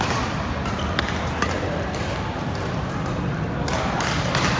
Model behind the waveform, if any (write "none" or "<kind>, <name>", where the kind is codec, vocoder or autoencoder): none